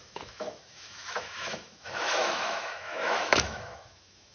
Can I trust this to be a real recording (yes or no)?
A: no